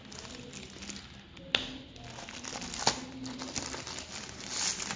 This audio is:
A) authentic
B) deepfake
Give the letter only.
A